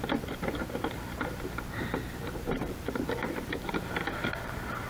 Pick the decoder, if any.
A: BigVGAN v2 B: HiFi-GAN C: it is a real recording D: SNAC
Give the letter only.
A